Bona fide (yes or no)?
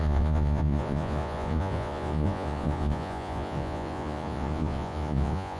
no